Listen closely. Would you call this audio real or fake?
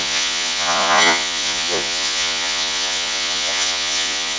fake